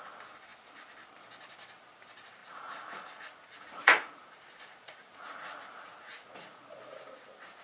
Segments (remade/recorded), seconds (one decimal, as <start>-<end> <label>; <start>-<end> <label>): 0.0-2.4 recorded; 2.4-6.8 remade; 6.8-7.6 recorded